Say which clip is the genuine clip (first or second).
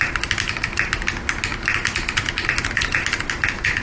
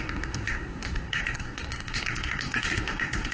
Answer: first